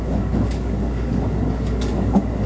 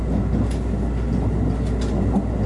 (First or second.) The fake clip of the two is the first